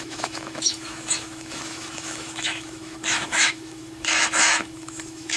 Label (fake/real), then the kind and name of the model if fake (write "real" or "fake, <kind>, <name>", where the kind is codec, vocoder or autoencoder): fake, autoencoder, DAC-VAE